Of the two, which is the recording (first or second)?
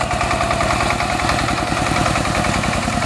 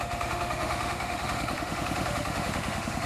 first